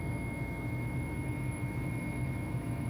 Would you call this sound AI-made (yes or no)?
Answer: yes